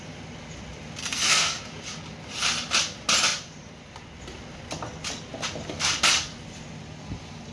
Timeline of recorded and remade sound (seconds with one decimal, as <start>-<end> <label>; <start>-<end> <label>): 0.0-1.0 recorded; 1.0-1.6 remade; 1.6-7.5 recorded